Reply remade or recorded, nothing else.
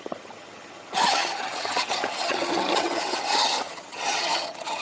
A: remade